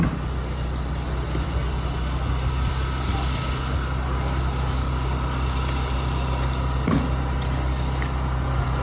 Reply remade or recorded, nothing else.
recorded